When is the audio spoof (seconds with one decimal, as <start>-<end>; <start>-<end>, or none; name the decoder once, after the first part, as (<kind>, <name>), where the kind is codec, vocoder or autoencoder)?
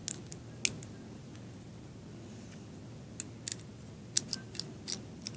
none